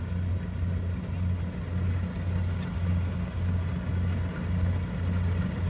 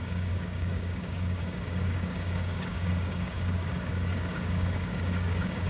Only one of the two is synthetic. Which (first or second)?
second